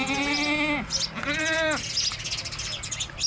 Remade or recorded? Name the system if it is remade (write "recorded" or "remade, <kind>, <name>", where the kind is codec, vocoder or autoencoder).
recorded